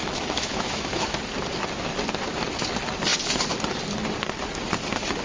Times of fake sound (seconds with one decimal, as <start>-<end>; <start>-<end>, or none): 0.0-1.2